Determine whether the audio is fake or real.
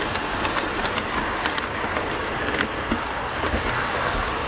real